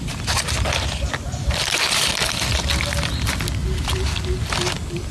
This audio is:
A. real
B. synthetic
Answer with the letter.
A